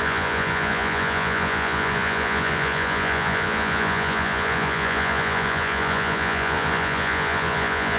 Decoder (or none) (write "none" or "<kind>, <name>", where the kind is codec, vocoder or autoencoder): vocoder, Vocos